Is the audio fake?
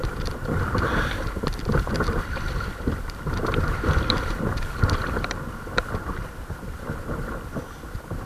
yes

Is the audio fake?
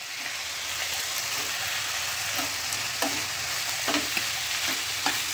no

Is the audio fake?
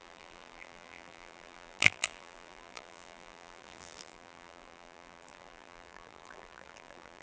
yes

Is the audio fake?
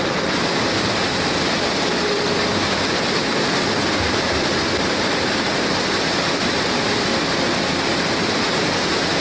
yes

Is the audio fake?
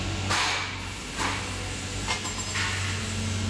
no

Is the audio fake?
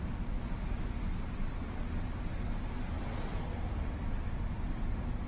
no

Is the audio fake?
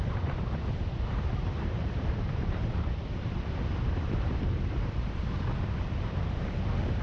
yes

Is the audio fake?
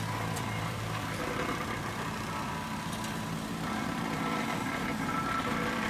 yes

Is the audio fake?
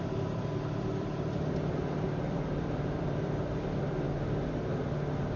yes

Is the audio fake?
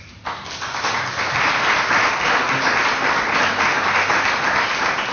no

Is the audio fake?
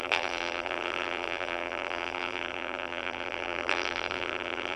yes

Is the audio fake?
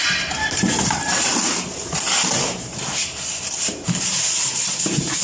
yes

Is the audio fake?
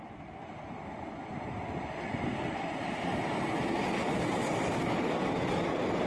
no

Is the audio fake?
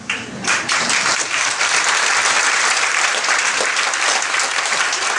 yes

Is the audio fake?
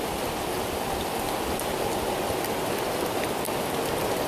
no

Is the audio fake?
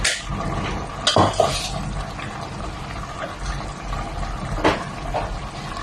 no